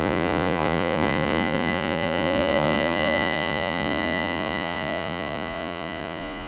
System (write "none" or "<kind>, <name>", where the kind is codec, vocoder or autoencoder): vocoder, Vocos